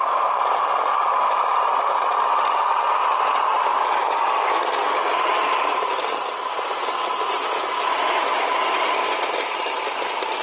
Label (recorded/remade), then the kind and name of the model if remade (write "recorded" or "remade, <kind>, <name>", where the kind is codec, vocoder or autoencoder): recorded